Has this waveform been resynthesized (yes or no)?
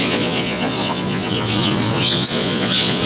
yes